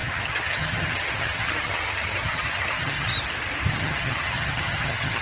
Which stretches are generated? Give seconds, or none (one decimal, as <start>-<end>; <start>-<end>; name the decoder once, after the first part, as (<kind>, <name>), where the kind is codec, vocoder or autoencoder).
0.0-3.1 (vocoder, HiFi-GAN); 3.7-5.2